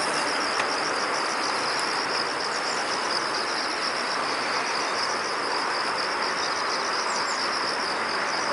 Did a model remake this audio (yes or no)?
no